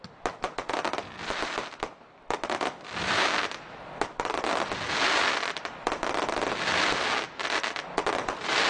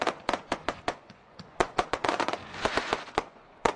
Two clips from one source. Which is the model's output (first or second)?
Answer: second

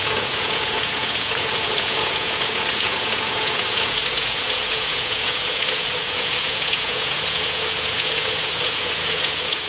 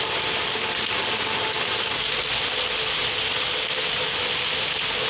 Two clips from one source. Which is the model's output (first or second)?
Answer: first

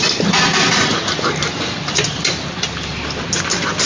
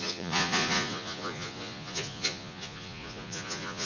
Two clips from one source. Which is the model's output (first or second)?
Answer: second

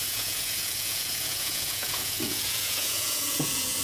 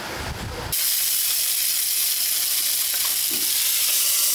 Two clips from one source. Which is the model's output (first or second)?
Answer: first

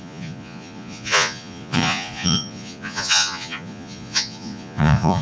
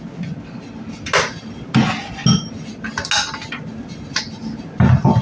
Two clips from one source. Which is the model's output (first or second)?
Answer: first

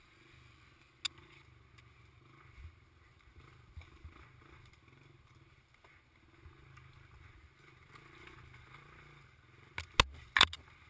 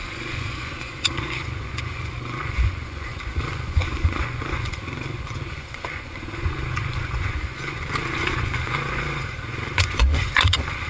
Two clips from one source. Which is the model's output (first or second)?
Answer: second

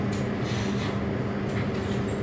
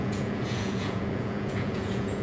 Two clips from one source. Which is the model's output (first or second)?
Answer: second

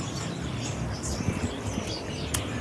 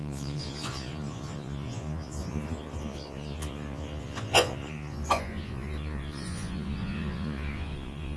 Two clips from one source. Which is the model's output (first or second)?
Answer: second